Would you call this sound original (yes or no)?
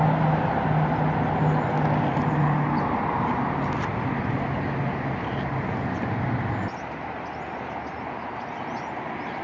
yes